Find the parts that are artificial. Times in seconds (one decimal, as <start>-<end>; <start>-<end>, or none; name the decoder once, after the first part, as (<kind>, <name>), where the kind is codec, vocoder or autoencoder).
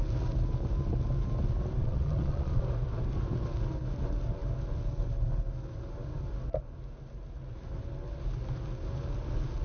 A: 1.8-2.6 (vocoder, Vocos)